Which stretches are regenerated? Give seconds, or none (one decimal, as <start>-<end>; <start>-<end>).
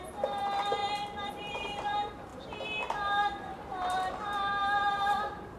0.0-0.8; 1.3-5.6